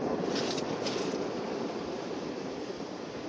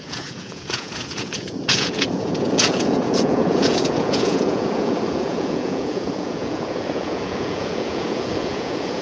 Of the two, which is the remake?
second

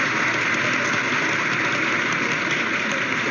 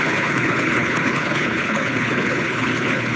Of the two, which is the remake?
second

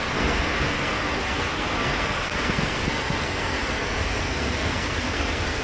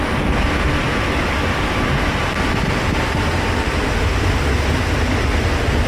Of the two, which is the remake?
first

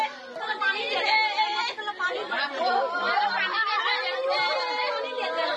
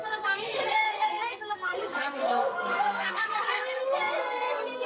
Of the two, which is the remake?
second